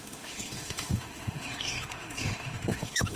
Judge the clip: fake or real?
fake